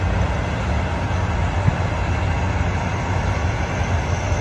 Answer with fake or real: real